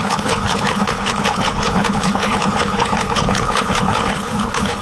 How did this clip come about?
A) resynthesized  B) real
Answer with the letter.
A